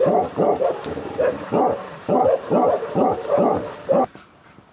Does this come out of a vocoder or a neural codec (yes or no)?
yes